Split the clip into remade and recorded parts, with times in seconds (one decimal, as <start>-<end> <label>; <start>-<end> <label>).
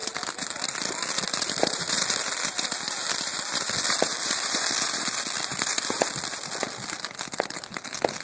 0.0-8.2 recorded